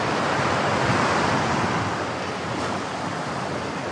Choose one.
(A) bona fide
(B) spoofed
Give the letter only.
A